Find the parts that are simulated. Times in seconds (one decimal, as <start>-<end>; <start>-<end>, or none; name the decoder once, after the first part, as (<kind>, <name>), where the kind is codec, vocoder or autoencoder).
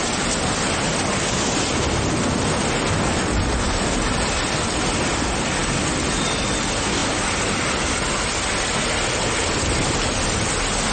none